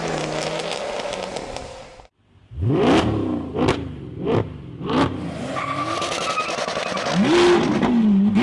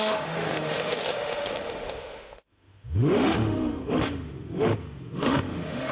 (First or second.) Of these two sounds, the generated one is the second